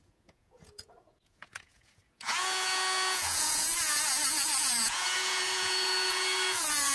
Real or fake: fake